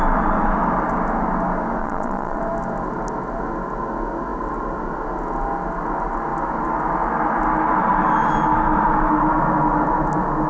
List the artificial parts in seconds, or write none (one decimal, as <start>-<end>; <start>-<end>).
1.8-2.4